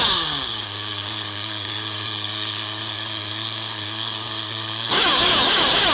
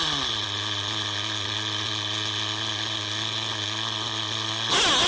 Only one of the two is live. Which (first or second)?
second